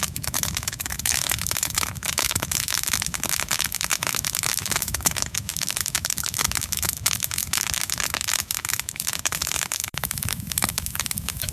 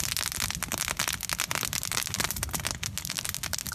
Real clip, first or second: second